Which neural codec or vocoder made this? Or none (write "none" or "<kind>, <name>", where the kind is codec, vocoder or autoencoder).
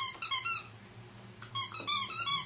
none